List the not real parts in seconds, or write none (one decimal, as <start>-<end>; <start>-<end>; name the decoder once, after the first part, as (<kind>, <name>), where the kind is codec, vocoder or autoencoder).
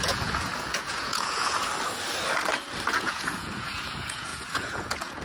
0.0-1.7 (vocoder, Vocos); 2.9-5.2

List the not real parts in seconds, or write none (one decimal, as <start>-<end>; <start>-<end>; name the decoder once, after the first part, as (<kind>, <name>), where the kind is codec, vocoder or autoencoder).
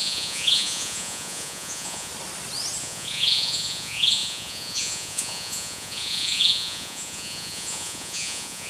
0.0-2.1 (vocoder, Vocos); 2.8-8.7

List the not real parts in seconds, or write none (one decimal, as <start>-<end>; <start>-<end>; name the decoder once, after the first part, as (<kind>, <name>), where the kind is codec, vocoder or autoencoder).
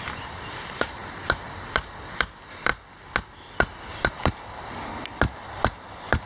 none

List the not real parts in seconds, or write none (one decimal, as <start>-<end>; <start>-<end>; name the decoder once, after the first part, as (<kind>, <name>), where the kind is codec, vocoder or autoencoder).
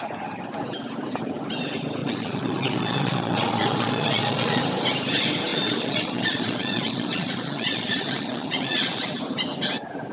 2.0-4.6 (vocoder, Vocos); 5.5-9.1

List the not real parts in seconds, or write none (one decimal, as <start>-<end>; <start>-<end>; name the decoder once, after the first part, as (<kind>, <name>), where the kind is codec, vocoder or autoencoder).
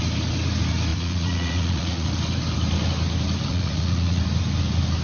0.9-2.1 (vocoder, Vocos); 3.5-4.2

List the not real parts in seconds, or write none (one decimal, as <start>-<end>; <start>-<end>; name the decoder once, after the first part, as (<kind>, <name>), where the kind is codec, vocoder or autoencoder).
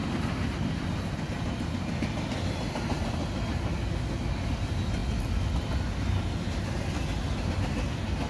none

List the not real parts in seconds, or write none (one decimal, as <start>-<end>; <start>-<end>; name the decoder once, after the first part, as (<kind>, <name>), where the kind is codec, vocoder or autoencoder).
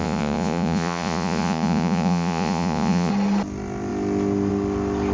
0.0-3.1 (vocoder, Vocos)